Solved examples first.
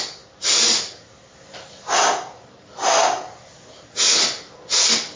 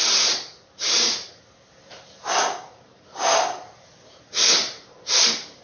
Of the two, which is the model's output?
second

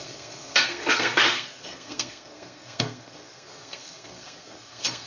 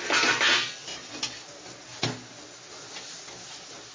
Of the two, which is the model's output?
first